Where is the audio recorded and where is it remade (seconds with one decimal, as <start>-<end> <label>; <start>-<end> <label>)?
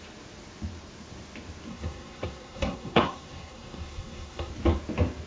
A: 0.0-1.7 recorded; 1.7-4.5 remade; 4.5-5.3 recorded